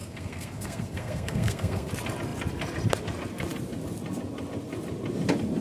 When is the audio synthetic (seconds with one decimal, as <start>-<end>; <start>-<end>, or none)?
0.0-1.9